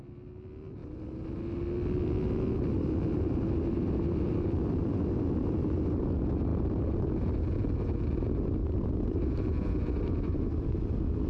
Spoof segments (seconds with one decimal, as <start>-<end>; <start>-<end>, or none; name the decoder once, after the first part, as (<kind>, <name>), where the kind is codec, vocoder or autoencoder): 6.5-7.3 (vocoder, BigVGAN v2); 8.6-10.7